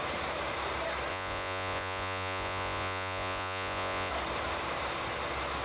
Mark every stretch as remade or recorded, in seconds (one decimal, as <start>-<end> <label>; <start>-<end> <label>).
0.0-1.1 recorded; 1.1-4.1 remade; 4.1-5.6 recorded